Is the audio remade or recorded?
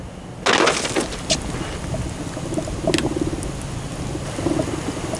recorded